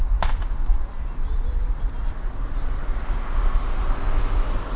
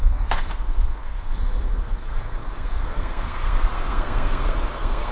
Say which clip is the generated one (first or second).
second